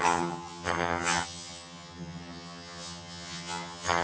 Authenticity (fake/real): fake